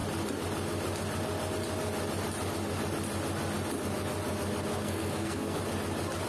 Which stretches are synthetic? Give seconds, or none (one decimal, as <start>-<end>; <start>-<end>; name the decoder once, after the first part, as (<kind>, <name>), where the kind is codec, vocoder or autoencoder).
4.7-5.6 (codec, SNAC)